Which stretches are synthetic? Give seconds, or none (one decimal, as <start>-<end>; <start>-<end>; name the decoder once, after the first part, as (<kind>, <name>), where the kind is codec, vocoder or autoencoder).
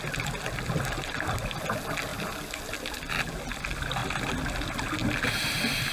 none